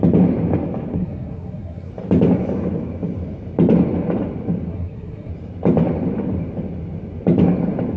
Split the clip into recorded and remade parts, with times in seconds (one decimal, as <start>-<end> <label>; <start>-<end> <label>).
0.0-0.9 recorded; 0.9-1.9 remade; 1.9-4.7 recorded; 4.7-5.3 remade; 5.3-8.0 recorded